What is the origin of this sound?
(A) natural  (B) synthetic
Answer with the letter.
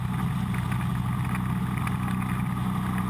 A